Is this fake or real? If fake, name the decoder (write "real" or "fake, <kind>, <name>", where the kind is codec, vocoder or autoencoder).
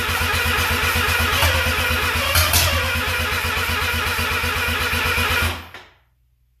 real